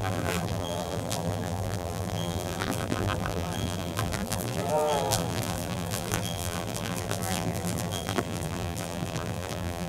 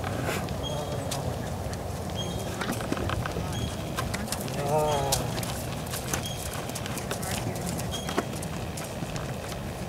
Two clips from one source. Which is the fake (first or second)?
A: first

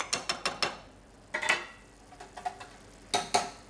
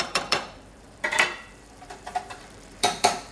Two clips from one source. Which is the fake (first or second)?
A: second